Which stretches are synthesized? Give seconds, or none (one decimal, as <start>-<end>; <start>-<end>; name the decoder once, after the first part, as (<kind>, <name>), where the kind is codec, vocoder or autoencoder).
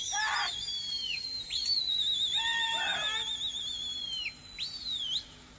none